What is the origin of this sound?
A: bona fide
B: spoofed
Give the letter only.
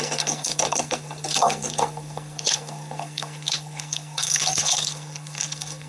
B